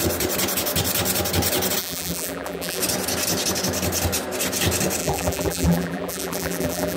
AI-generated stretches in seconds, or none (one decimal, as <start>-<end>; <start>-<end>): 1.8-2.8; 5.0-7.0